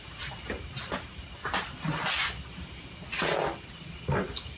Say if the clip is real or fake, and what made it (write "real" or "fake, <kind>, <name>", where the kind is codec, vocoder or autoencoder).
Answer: real